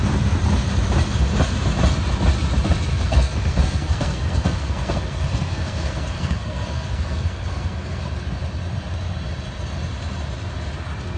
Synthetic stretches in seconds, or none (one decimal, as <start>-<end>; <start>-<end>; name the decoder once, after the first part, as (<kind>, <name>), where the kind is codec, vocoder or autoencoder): 2.9-8.0 (codec, SNAC)